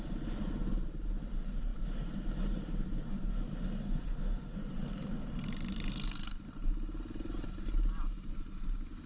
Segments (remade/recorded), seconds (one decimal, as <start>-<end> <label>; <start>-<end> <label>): 0.0-9.1 recorded

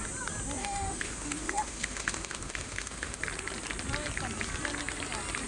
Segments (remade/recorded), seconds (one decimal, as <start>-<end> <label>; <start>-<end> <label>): 0.0-0.6 recorded; 0.6-3.2 remade; 3.2-5.5 recorded

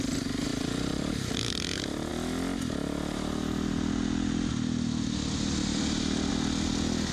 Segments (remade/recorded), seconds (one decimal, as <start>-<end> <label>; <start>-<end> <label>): 0.0-0.5 recorded; 0.5-1.1 remade; 1.1-7.1 recorded

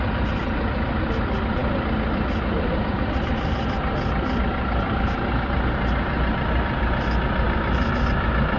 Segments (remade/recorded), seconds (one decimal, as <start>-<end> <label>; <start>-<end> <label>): 0.0-8.6 recorded

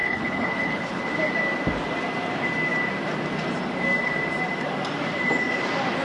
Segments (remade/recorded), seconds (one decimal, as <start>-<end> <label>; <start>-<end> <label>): 0.0-1.0 remade; 1.0-6.0 recorded

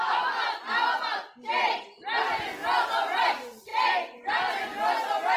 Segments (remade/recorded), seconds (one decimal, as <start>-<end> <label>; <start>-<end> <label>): 0.0-5.4 recorded

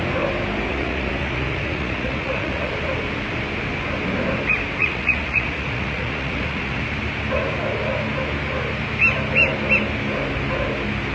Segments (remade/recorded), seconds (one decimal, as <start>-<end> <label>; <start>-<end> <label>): 0.0-0.7 recorded; 0.7-2.7 remade; 2.7-4.8 recorded; 4.8-6.8 remade; 6.8-11.1 recorded

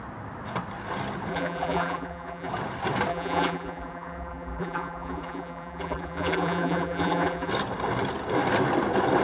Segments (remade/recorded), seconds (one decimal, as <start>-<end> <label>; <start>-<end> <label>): 0.0-1.3 recorded; 1.3-2.5 remade; 2.5-3.1 recorded; 3.1-7.5 remade; 7.5-9.2 recorded